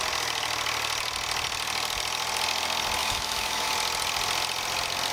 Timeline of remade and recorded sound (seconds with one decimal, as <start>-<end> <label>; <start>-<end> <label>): 0.0-3.0 recorded; 3.0-3.7 remade; 3.7-5.1 recorded